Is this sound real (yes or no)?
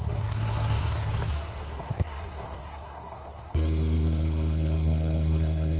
no